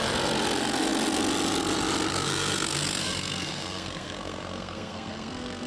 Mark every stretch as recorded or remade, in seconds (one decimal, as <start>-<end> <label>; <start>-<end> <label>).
0.0-2.1 recorded; 2.1-5.7 remade